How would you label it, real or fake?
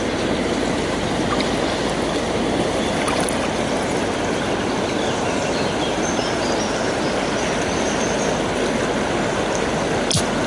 real